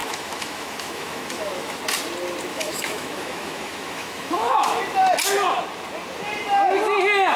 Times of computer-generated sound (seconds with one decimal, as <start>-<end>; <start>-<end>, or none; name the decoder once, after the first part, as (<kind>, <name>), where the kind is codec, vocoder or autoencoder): 0.0-1.8 (autoencoder, DAC-VAE); 2.5-4.8

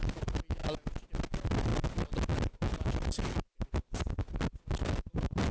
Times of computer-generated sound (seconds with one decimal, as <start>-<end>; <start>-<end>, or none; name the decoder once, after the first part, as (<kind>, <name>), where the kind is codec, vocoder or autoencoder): none

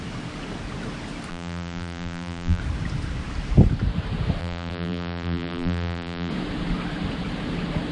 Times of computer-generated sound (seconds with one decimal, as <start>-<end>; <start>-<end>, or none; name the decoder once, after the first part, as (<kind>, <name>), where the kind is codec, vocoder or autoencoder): 1.3-2.6 (vocoder, BigVGAN v2); 4.4-6.3

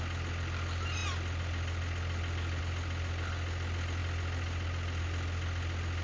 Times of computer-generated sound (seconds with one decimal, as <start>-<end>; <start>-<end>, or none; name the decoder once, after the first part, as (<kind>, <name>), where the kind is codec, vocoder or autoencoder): none